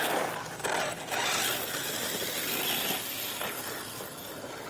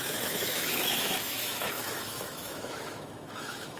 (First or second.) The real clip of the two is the first